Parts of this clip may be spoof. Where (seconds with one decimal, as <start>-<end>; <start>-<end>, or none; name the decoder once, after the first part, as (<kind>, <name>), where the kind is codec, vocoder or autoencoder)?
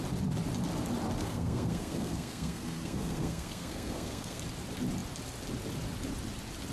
1.2-4.4 (codec, SNAC)